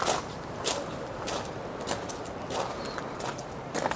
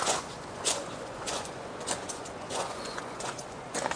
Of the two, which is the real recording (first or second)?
first